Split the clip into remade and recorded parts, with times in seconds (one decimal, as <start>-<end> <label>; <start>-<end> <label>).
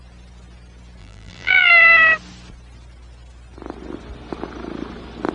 0.0-1.0 recorded; 1.0-1.7 remade; 1.7-5.3 recorded